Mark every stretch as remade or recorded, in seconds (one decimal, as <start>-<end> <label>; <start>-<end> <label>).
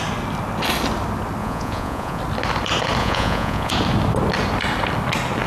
0.0-1.4 recorded; 1.4-2.2 remade; 2.2-3.0 recorded; 3.0-3.7 remade; 3.7-5.5 recorded